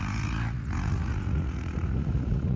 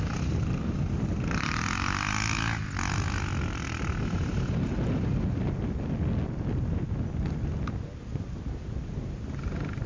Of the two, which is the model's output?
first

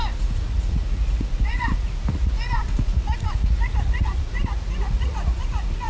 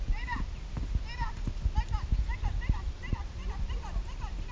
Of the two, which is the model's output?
first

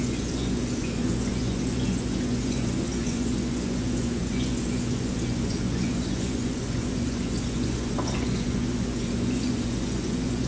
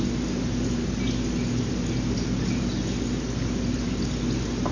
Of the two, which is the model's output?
first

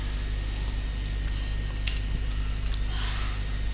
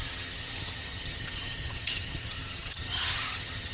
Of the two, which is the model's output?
second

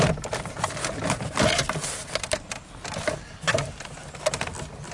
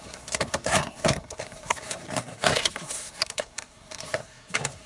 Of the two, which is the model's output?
second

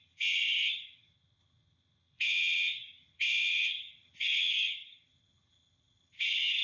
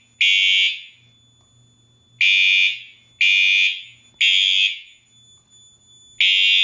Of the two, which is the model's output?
first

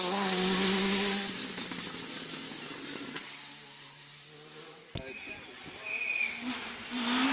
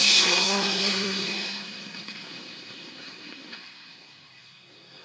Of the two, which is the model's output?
second